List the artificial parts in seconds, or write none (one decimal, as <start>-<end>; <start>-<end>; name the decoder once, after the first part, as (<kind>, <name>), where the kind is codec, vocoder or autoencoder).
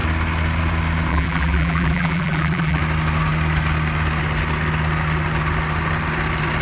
1.1-2.8 (vocoder, BigVGAN v2)